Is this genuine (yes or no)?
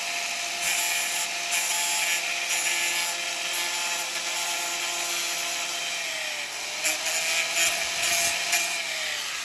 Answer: yes